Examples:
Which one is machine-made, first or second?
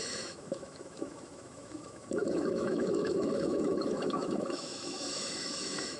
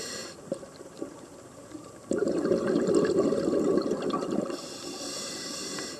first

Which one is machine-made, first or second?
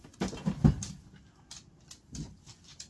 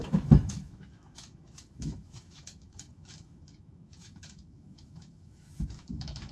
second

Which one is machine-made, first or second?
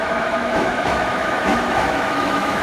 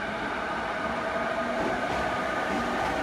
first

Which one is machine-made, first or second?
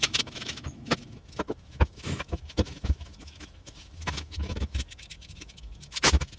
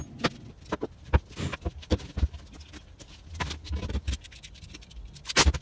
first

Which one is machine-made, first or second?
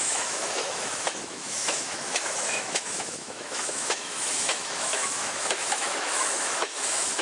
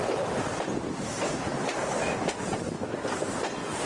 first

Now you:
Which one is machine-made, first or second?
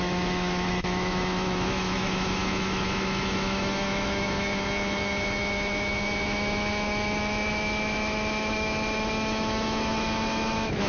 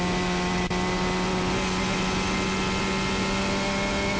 first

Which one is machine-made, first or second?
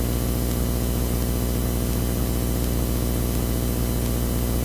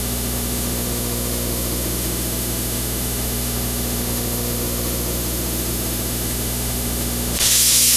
second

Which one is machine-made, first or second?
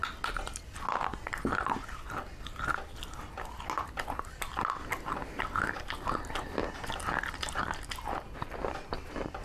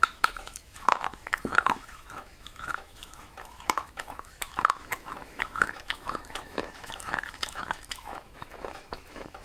second